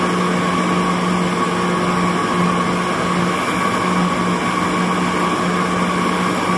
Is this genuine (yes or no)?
yes